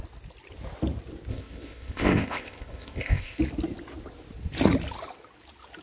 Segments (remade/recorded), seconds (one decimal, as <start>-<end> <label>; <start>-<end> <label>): 0.0-1.3 recorded; 1.3-3.4 remade; 3.4-5.8 recorded